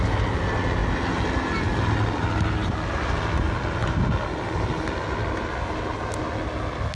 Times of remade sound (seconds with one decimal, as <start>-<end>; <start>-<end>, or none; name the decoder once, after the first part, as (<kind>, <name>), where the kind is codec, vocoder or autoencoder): none